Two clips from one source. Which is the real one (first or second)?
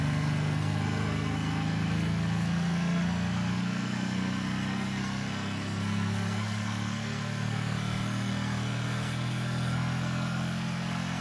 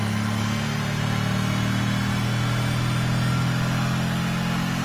second